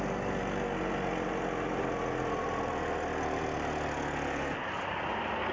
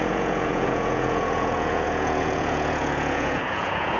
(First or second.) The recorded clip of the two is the first